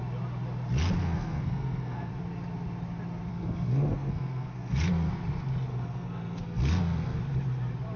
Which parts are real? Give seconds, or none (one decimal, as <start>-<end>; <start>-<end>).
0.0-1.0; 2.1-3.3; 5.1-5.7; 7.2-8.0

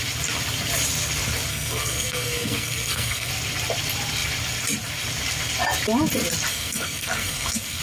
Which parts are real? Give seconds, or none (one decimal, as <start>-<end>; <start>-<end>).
0.0-1.5; 3.3-6.5

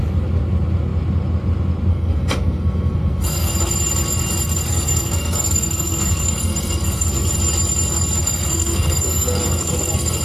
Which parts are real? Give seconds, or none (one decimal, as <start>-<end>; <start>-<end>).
0.0-1.9; 3.5-4.7; 7.3-8.2

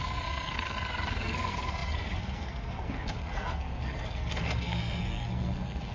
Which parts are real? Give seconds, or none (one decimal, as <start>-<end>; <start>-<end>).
none

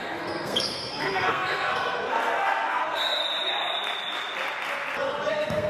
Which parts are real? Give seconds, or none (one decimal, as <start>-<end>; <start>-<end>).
3.2-5.3